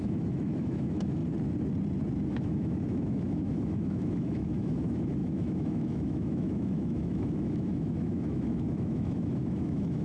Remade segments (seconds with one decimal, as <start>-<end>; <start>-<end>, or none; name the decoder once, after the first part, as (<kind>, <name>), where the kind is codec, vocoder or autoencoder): 0.0-1.2 (autoencoder, DAC-VAE); 2.3-10.0